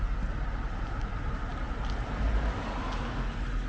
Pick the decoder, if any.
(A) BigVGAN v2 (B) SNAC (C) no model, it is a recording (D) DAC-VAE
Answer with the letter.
C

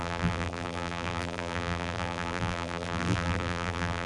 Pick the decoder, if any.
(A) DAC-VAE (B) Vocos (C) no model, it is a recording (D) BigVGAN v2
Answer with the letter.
D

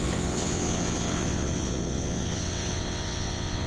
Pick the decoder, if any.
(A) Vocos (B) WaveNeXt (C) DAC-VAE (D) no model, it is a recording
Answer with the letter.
B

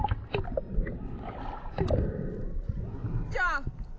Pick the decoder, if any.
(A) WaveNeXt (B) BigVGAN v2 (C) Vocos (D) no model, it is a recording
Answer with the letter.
D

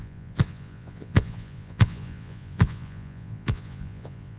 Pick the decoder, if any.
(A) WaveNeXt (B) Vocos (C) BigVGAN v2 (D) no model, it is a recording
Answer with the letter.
B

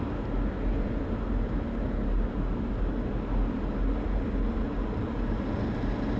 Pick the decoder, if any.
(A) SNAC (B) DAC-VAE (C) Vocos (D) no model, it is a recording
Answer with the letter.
D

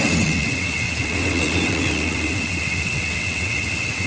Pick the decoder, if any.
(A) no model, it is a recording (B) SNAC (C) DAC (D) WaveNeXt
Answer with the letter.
D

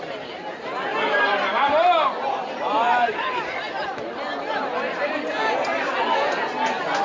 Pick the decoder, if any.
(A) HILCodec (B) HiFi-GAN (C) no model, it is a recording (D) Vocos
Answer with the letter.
C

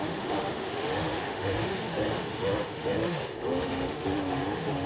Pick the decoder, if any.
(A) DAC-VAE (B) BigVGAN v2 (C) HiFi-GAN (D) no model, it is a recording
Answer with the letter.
A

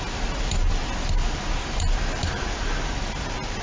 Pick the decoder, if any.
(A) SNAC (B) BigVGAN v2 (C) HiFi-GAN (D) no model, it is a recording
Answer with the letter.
D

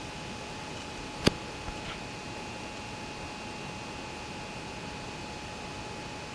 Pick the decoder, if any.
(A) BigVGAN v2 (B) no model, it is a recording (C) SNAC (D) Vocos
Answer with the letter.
B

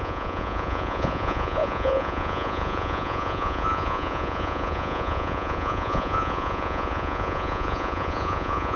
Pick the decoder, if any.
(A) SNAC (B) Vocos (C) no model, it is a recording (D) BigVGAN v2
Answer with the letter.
B